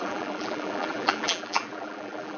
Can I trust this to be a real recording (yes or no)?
no